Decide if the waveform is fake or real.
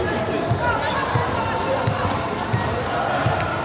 real